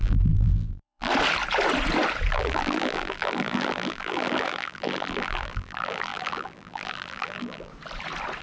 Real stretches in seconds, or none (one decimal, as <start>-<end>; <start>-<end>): 1.1-2.3; 7.7-8.4